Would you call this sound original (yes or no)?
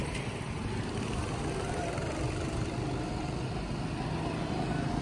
yes